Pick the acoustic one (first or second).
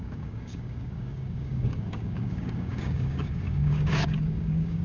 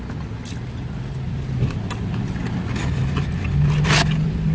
second